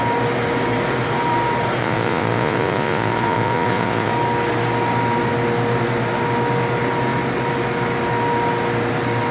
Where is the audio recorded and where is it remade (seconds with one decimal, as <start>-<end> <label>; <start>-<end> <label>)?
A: 0.0-1.8 recorded; 1.8-4.1 remade; 4.1-9.3 recorded